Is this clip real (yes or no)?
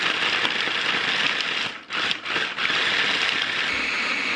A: yes